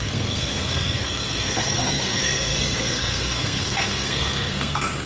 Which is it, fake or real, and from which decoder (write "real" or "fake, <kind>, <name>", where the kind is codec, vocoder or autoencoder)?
fake, codec, SNAC